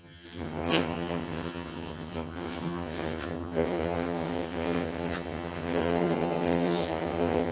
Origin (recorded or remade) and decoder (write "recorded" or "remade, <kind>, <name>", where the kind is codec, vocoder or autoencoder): remade, vocoder, HiFi-GAN